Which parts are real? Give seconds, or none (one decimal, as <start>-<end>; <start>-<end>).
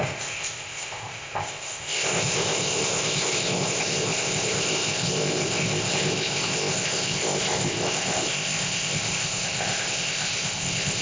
none